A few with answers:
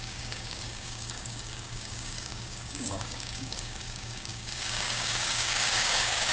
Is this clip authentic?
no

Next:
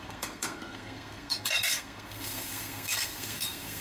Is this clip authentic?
no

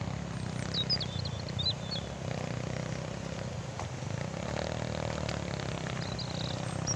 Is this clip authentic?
yes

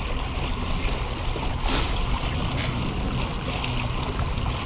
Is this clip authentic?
yes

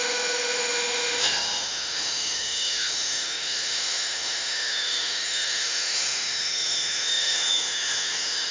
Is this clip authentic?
no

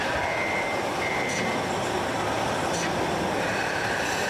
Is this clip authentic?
no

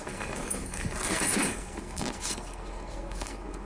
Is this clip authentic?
no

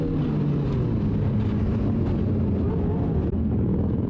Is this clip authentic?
yes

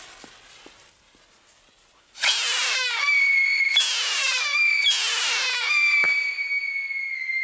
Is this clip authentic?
yes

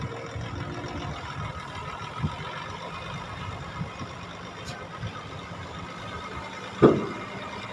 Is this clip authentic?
yes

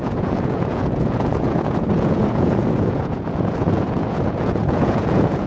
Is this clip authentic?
no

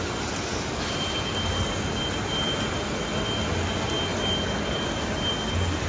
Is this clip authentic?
yes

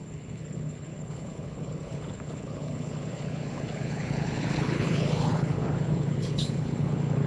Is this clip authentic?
no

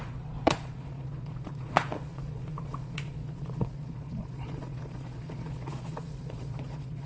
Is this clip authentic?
no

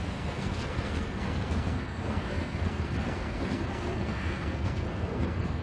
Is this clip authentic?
no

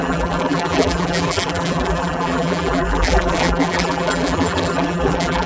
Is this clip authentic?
no